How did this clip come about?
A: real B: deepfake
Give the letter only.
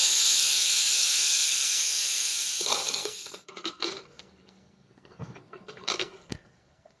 B